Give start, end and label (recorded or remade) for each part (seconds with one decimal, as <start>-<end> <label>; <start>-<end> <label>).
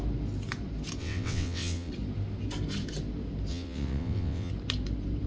0.0-1.0 recorded; 1.0-1.9 remade; 1.9-3.5 recorded; 3.5-4.5 remade; 4.5-5.3 recorded